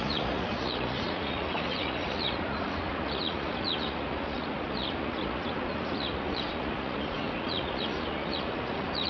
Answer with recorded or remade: remade